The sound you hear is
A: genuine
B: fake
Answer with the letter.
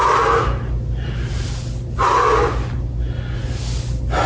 A